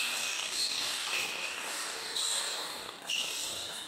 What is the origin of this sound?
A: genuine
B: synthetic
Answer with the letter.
B